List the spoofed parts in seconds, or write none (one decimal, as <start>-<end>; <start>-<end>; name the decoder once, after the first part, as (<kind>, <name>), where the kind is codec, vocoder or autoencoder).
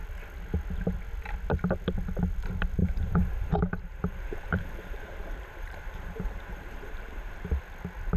2.8-7.6 (vocoder, BigVGAN v2)